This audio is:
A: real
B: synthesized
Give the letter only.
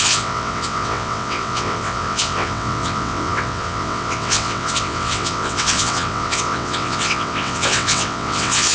B